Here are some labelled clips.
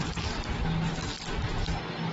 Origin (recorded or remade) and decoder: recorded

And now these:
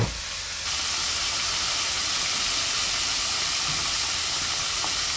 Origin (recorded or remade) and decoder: recorded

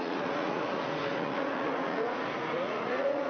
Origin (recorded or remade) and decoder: remade, vocoder, Vocos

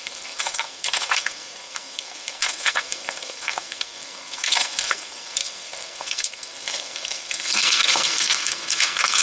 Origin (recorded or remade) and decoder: remade, codec, SNAC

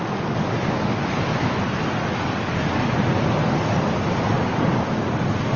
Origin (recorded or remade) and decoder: recorded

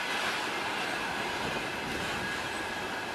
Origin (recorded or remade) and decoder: recorded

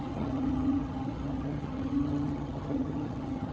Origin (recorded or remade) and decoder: remade, vocoder, HiFi-GAN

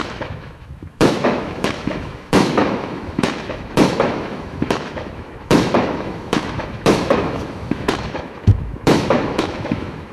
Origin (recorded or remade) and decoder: remade, autoencoder, DAC-VAE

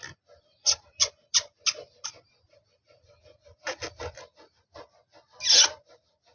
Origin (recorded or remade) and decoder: recorded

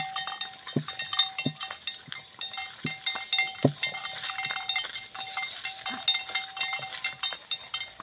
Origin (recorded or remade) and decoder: recorded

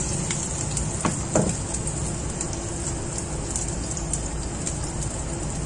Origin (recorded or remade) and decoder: recorded